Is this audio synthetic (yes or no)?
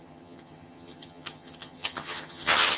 yes